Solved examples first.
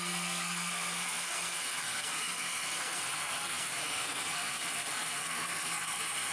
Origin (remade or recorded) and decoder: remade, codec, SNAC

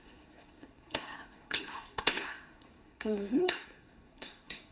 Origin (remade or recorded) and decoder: remade, codec, SNAC